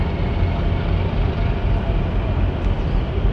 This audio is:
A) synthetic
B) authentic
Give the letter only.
B